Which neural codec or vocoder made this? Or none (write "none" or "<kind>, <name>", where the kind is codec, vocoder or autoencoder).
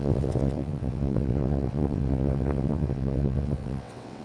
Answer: vocoder, WaveNeXt